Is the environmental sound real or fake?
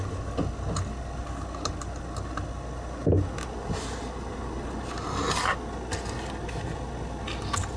real